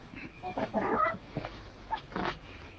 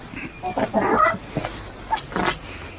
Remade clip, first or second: first